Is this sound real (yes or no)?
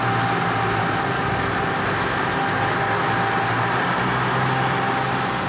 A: yes